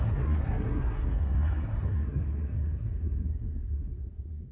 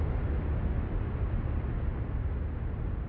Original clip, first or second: second